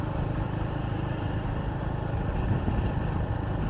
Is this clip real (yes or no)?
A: yes